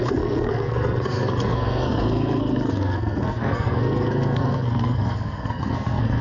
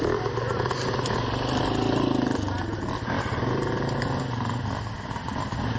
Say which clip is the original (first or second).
second